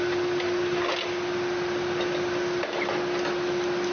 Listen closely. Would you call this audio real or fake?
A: real